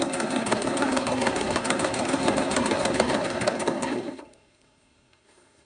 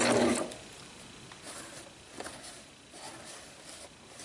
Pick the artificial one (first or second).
first